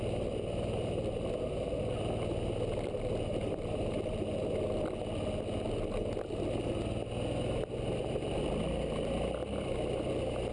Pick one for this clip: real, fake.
real